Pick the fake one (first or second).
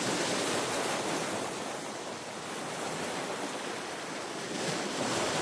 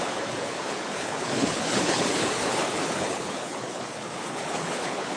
second